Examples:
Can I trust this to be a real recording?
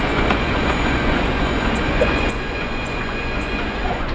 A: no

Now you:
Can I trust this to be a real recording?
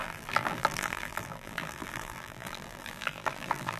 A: no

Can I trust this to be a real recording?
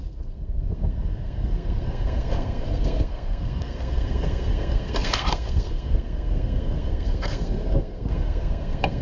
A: no